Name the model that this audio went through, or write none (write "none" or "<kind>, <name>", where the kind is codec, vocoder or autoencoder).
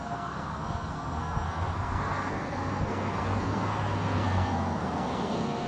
codec, SNAC